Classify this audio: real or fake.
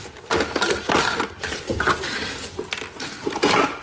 real